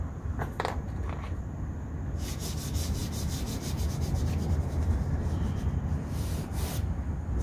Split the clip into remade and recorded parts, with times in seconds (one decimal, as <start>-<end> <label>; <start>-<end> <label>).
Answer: 0.0-0.4 recorded; 0.4-1.0 remade; 1.0-3.0 recorded; 3.0-3.8 remade; 3.8-7.4 recorded